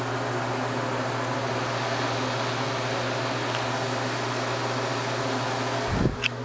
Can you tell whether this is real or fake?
real